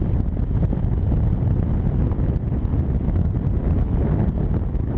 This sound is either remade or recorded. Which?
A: recorded